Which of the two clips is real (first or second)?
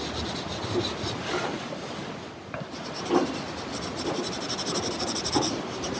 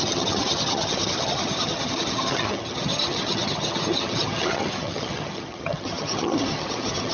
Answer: first